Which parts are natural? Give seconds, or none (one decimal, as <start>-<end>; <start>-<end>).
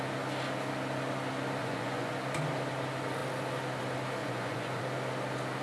0.0-1.6; 2.1-4.2; 4.8-5.6